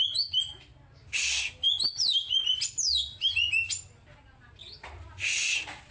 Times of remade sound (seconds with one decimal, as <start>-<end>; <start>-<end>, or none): none